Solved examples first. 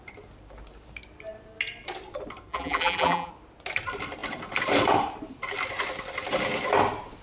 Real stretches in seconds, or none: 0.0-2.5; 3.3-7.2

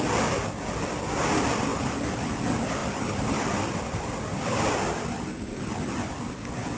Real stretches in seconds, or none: 0.0-1.7; 2.3-2.8